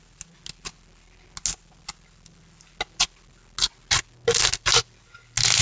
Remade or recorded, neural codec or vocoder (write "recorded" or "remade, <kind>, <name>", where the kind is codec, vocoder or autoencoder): recorded